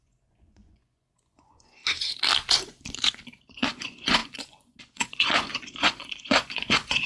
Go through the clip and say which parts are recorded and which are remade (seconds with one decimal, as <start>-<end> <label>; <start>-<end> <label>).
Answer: 0.0-1.8 remade; 1.8-3.4 recorded; 3.4-7.1 remade